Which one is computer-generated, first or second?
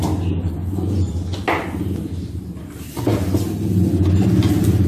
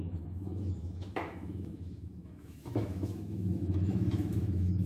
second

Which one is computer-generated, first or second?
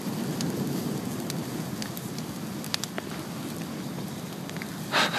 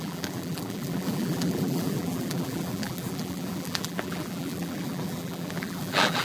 second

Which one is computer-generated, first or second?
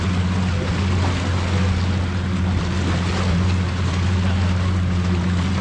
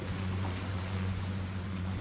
second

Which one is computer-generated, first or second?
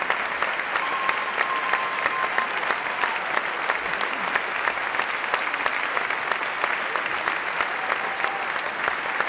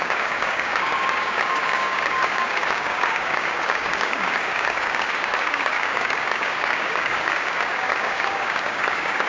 second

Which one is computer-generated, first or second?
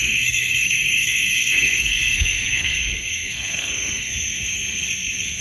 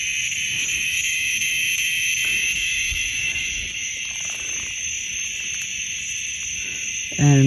first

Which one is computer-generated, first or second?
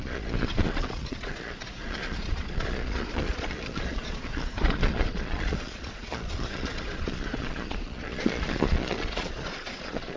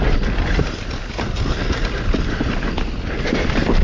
first